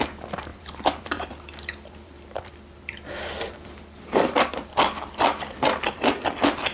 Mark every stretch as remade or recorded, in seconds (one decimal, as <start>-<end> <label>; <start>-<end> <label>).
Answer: 0.0-0.5 recorded; 0.5-4.5 remade; 4.5-6.7 recorded